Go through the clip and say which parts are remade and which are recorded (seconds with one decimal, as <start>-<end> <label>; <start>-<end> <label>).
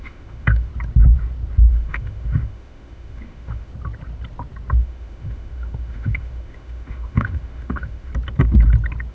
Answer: 0.0-0.7 remade; 0.7-1.7 recorded; 1.7-3.7 remade; 3.7-4.8 recorded; 4.8-8.1 remade; 8.1-9.1 recorded